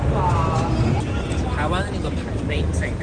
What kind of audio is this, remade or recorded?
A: recorded